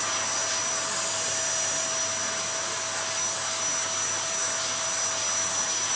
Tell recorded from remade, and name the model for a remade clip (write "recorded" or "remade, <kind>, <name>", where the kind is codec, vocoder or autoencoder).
recorded